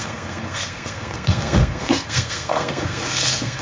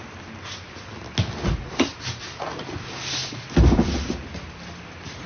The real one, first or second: second